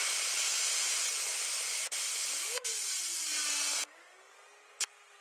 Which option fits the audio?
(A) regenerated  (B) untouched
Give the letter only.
B